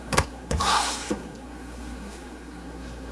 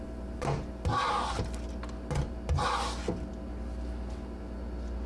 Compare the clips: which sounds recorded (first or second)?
second